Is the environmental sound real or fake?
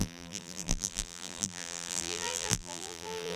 fake